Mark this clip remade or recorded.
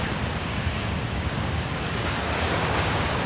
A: remade